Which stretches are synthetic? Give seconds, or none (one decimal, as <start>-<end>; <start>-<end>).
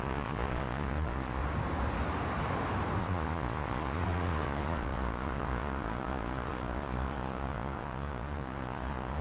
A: 0.0-1.4; 3.0-9.2